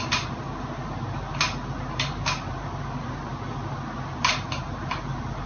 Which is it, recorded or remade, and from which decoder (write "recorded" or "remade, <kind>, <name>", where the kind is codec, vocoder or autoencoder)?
recorded